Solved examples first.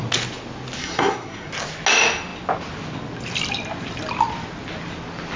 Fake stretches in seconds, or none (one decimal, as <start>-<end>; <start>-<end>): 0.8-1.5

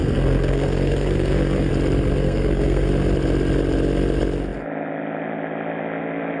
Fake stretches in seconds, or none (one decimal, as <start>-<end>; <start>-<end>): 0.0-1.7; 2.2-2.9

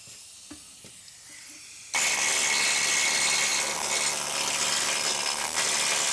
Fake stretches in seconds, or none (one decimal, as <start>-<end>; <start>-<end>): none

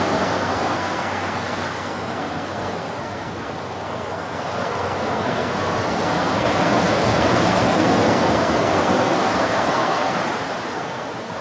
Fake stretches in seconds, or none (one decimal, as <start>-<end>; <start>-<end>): 0.0-10.2; 10.7-11.4